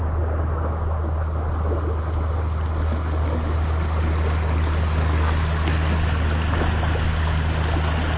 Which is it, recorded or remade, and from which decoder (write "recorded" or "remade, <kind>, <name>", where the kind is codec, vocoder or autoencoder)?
recorded